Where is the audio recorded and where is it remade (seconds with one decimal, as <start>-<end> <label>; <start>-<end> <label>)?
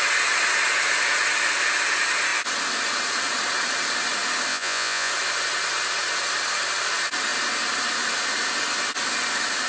0.0-4.5 recorded; 4.5-5.1 remade; 5.1-9.7 recorded